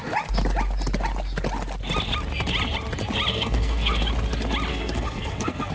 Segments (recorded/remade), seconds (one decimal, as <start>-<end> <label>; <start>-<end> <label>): 0.0-3.3 recorded; 3.3-4.0 remade; 4.0-4.7 recorded; 4.7-5.7 remade